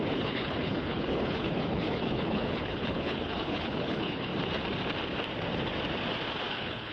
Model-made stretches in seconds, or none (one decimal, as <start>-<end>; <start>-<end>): 0.0-4.3; 6.5-6.9